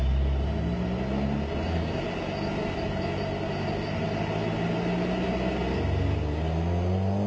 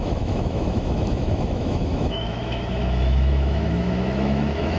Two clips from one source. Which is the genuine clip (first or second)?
first